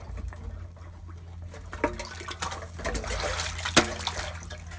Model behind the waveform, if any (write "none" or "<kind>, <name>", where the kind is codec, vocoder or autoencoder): none